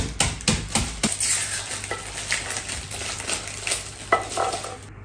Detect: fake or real real